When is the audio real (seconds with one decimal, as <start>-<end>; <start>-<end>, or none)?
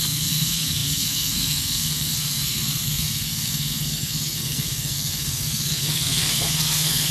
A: none